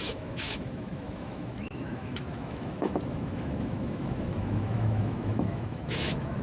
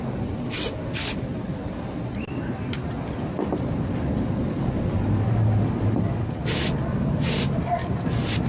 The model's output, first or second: first